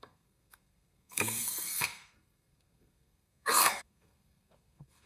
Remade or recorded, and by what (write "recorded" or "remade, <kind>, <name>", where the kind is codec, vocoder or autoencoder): remade, codec, SNAC